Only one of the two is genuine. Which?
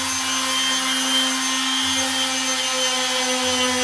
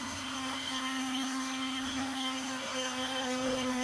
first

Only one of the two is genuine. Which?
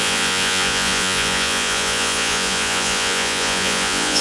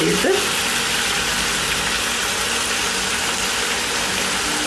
second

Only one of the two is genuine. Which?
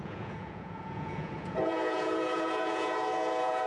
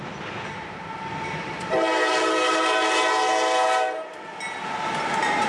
second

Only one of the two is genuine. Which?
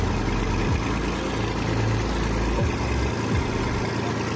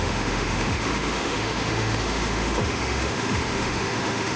first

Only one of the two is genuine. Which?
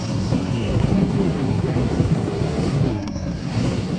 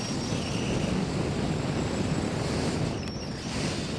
second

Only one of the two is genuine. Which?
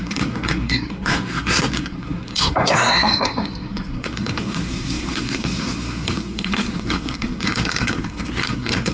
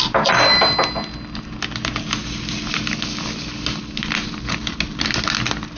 second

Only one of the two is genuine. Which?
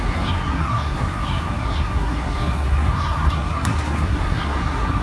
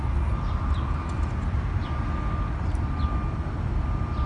second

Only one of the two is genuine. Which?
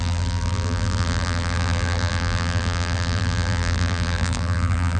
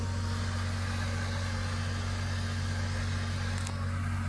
second